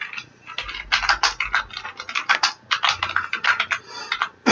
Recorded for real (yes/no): yes